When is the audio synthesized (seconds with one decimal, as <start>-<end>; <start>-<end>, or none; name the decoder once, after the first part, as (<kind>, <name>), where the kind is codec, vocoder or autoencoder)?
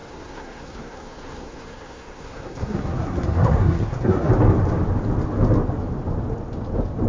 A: 0.0-4.3 (codec, SNAC)